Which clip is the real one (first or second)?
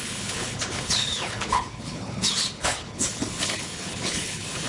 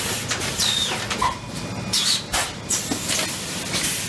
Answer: second